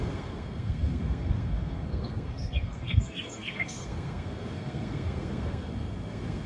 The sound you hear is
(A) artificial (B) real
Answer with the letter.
A